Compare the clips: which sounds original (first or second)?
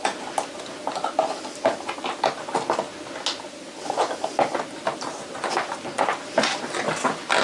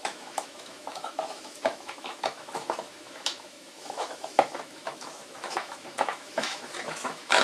first